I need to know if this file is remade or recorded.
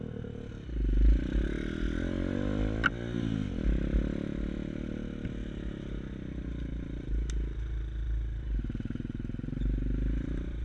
recorded